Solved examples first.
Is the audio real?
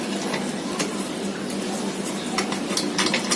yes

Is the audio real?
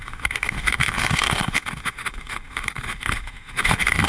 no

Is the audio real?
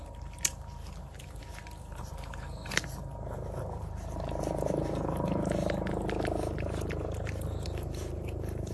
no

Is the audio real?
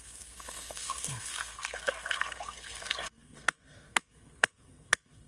no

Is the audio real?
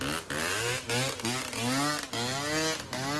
yes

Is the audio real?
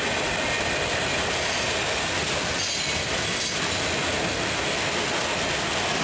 yes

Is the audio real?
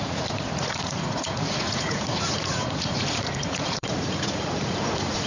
no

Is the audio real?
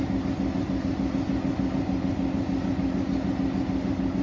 yes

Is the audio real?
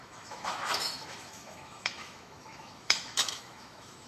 no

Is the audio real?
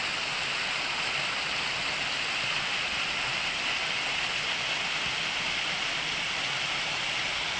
yes